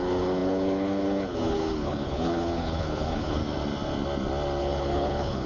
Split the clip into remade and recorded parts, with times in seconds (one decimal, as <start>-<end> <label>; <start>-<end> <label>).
0.0-3.4 remade; 3.4-4.6 recorded; 4.6-5.5 remade